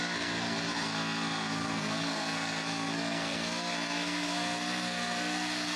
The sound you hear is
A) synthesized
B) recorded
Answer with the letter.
A